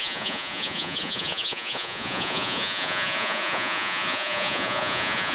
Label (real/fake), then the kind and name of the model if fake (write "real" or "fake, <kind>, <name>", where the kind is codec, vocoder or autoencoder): fake, vocoder, Vocos